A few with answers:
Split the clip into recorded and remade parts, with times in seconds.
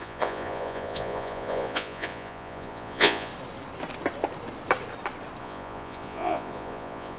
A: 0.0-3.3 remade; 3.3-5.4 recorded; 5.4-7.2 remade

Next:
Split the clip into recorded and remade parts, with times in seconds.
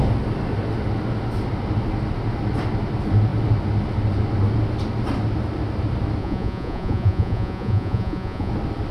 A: 0.0-6.2 recorded; 6.2-8.5 remade; 8.5-8.9 recorded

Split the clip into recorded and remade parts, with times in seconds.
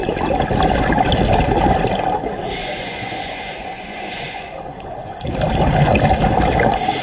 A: 0.0-2.6 recorded; 2.6-5.2 remade; 5.2-7.0 recorded